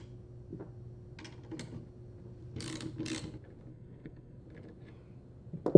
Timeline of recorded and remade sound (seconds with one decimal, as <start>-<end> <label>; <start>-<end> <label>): 0.0-3.7 recorded; 3.7-4.4 remade; 4.4-5.8 recorded